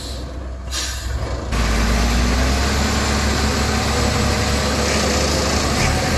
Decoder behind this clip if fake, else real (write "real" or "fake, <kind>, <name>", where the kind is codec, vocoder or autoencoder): real